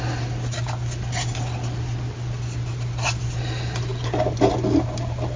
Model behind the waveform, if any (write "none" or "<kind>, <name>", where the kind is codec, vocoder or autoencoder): none